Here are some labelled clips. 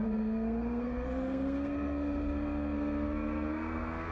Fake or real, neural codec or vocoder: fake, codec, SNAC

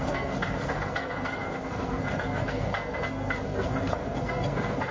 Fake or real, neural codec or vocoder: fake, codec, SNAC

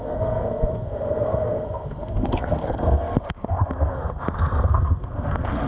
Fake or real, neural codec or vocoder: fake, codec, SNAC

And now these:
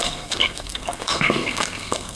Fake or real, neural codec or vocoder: fake, codec, SNAC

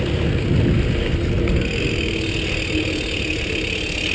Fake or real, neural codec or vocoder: real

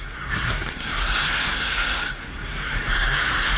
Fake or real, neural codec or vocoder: fake, codec, SNAC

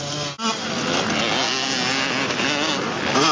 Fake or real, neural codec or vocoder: real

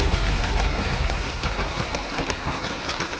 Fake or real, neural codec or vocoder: fake, codec, SNAC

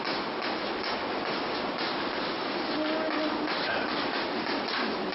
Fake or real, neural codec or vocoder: real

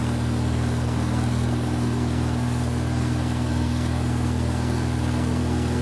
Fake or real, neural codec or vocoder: fake, codec, SNAC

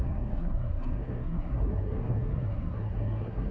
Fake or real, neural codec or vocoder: fake, codec, SNAC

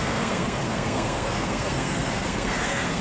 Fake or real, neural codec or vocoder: fake, codec, SNAC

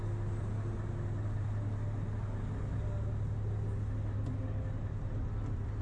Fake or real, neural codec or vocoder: real